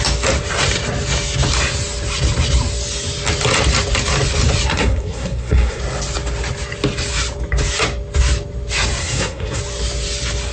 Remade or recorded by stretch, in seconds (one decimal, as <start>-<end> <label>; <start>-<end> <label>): 0.0-4.7 recorded; 4.7-5.8 remade; 5.8-9.0 recorded; 9.0-9.6 remade; 9.6-10.5 recorded